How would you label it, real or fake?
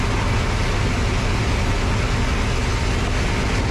real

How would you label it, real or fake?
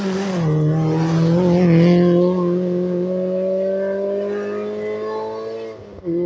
real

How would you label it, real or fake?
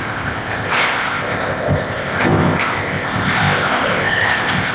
fake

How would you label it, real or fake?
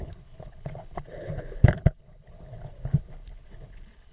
fake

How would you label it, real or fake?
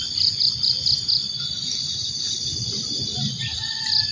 real